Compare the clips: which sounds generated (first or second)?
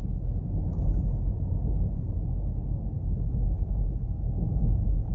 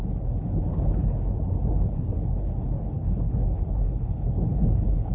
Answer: second